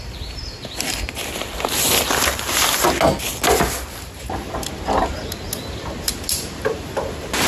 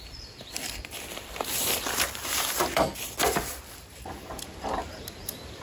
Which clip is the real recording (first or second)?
first